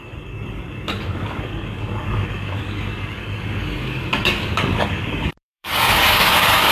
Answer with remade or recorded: remade